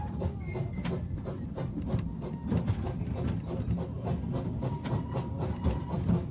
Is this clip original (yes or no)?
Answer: yes